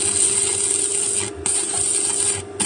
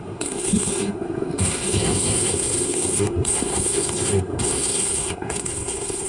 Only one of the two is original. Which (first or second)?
first